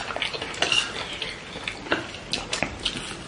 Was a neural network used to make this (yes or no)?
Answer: no